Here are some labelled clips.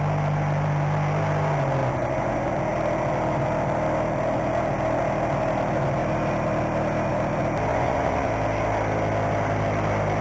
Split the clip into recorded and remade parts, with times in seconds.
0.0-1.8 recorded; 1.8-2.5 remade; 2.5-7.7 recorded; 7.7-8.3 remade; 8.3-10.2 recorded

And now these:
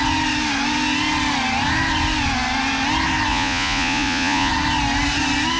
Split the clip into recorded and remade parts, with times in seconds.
0.0-3.3 recorded; 3.3-4.5 remade; 4.5-5.6 recorded

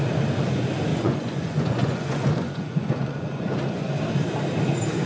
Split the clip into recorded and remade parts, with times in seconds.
0.0-0.9 recorded; 0.9-4.0 remade; 4.0-5.1 recorded

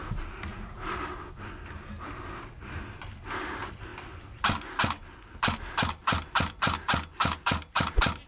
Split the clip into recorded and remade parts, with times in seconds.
0.0-0.5 recorded; 0.5-1.0 remade; 1.0-8.3 recorded

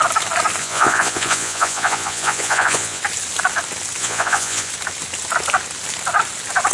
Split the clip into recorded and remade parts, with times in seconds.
0.0-0.6 recorded; 0.6-3.0 remade; 3.0-4.0 recorded; 4.0-4.7 remade; 4.7-6.7 recorded

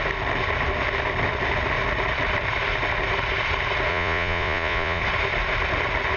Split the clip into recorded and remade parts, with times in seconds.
0.0-3.9 recorded; 3.9-5.0 remade; 5.0-6.2 recorded

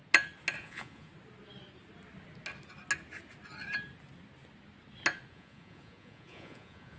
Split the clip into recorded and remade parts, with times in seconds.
0.0-0.6 recorded; 0.6-1.1 remade; 1.1-5.3 recorded; 5.3-7.0 remade

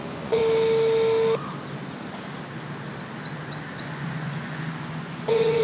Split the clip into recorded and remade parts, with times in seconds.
0.0-0.4 remade; 0.4-3.8 recorded; 3.8-5.6 remade